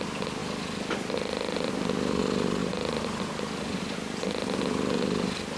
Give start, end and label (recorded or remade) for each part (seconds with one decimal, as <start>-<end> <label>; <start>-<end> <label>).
0.0-0.4 recorded; 0.4-2.2 remade; 2.2-2.6 recorded; 2.6-3.2 remade; 3.2-5.6 recorded